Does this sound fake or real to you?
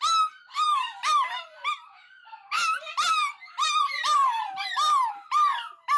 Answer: fake